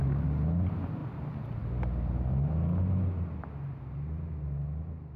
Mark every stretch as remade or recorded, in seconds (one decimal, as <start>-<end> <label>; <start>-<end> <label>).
0.0-5.2 recorded